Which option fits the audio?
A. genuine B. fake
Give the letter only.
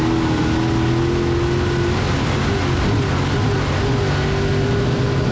A